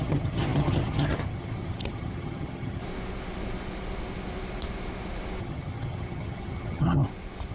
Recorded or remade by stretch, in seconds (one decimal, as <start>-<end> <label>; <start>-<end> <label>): 0.0-2.8 remade; 2.8-5.4 recorded; 5.4-7.0 remade; 7.0-7.5 recorded